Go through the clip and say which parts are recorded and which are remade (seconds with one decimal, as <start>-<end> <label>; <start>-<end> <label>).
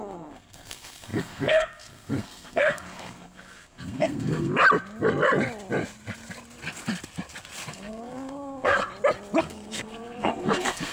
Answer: 0.0-4.5 remade; 4.5-7.7 recorded; 7.7-8.8 remade; 8.8-9.4 recorded; 9.4-10.9 remade